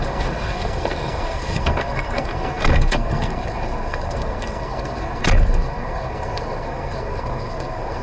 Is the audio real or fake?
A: fake